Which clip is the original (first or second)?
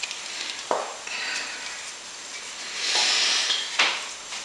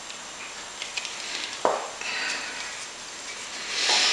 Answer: second